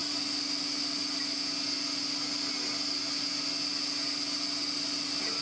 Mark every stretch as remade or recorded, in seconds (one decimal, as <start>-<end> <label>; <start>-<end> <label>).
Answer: 0.0-5.4 recorded